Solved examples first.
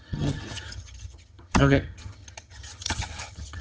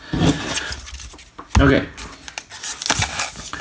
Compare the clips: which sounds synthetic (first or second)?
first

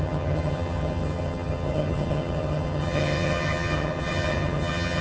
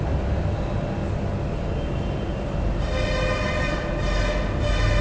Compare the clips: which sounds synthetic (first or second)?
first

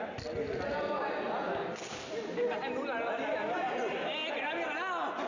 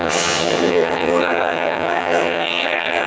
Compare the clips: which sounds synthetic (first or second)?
second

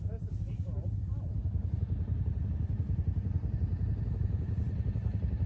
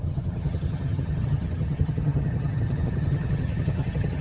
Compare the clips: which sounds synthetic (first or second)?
second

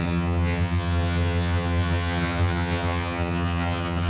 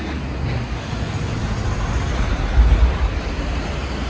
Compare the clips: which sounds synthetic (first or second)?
first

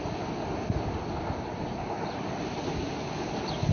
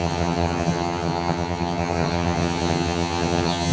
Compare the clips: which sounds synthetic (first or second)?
second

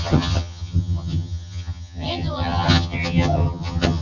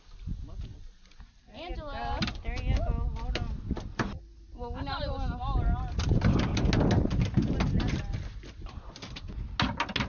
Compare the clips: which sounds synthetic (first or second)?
first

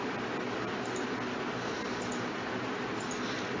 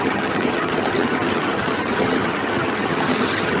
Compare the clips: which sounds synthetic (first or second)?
second